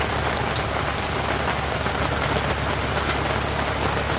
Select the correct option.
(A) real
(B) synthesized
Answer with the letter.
A